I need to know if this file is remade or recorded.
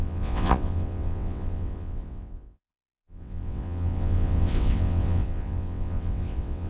remade